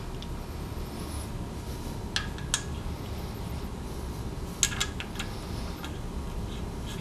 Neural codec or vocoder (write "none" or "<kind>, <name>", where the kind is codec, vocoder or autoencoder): none